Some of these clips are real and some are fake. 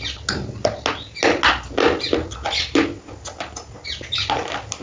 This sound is real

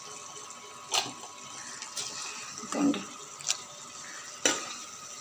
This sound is real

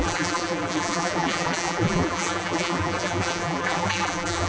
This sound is fake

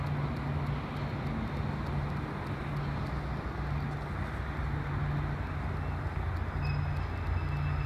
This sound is real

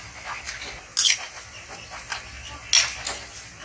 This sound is real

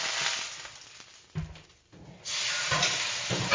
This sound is real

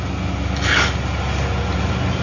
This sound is real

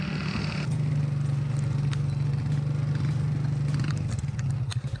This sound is real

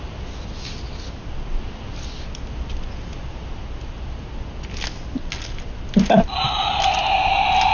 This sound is real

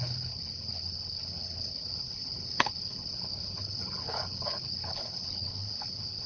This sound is fake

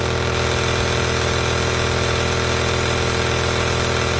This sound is real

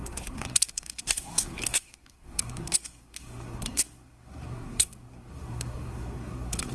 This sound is fake